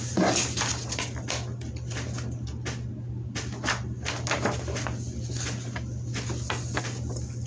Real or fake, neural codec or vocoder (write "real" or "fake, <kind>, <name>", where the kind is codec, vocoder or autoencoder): real